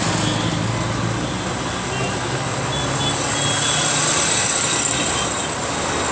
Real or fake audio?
real